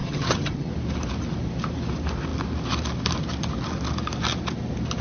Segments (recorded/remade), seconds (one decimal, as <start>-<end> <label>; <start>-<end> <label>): 0.0-0.7 remade; 0.7-5.0 recorded